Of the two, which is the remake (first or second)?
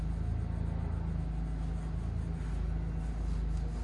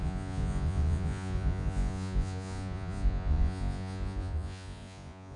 second